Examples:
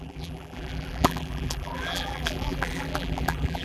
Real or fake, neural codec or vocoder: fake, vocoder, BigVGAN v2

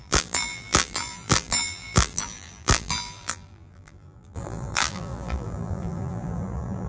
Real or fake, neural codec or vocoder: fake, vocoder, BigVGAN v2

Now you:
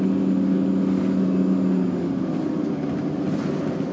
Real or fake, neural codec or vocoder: real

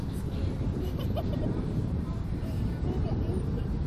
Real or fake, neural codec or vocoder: fake, vocoder, BigVGAN v2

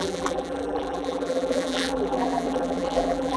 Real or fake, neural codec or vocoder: fake, vocoder, BigVGAN v2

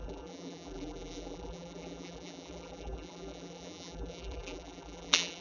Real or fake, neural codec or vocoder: fake, vocoder, BigVGAN v2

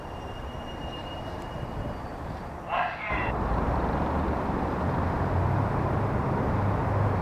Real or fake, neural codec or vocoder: fake, vocoder, BigVGAN v2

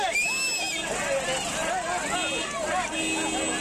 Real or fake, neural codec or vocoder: real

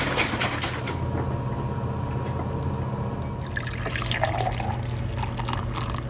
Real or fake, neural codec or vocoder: real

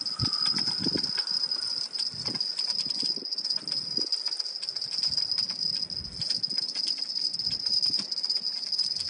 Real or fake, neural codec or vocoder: real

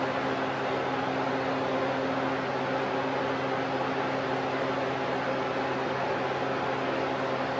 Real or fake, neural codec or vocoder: real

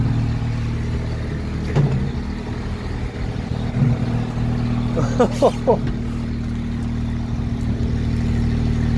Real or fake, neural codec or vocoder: real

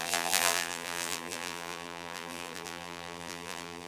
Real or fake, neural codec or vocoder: fake, vocoder, BigVGAN v2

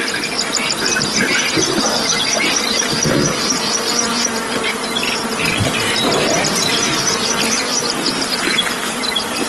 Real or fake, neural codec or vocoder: real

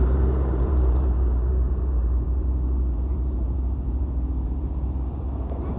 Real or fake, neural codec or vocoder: fake, vocoder, BigVGAN v2